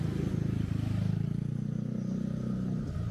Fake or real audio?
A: real